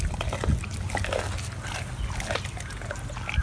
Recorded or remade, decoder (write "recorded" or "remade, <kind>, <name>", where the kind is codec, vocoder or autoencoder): recorded